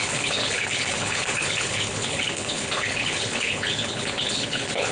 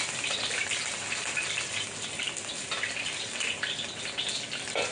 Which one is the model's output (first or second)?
first